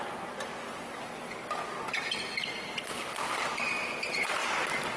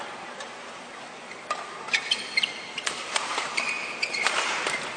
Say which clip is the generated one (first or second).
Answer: second